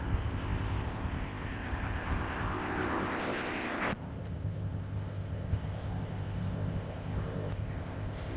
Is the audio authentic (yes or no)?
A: no